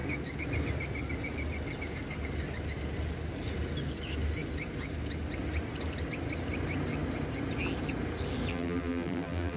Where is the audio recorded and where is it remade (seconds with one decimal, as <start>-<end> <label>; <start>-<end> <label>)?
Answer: 0.0-8.5 recorded; 8.5-9.6 remade